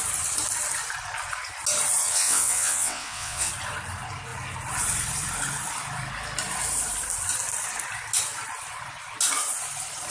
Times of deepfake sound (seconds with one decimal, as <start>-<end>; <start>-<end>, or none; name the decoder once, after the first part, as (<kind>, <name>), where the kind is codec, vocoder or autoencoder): 2.0-3.5 (vocoder, WaveNeXt)